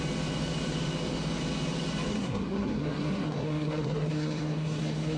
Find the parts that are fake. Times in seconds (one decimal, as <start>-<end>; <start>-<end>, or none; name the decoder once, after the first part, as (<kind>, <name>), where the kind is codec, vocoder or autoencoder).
2.1-5.2 (codec, SNAC)